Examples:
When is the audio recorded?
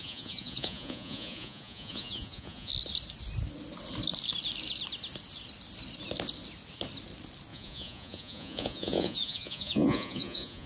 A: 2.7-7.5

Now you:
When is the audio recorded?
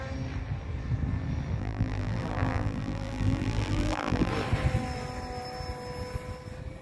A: 0.0-1.6; 4.3-6.8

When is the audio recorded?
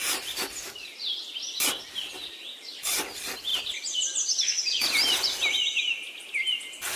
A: 0.0-7.0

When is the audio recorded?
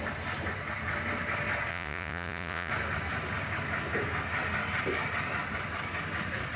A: 0.0-1.7; 2.7-6.6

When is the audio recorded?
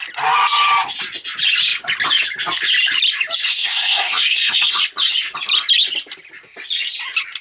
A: 0.0-3.5; 4.8-7.4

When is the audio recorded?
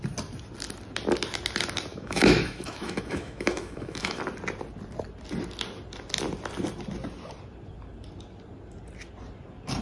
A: 0.0-1.9; 4.2-9.8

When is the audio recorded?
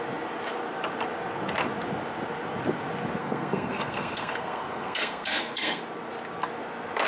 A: 0.0-3.2; 5.8-7.1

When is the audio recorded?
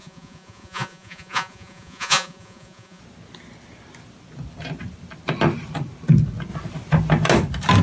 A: 3.0-7.8